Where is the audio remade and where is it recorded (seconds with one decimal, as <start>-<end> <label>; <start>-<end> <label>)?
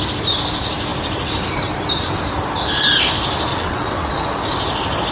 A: 0.0-3.5 recorded; 3.5-4.1 remade; 4.1-5.1 recorded